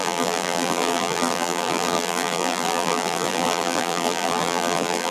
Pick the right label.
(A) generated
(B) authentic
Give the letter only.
A